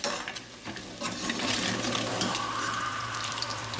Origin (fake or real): fake